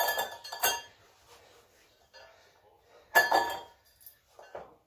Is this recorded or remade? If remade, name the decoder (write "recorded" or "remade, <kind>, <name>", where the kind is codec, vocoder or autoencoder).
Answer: recorded